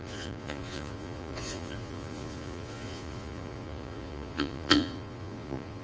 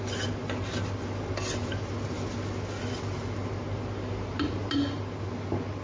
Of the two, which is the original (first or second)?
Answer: second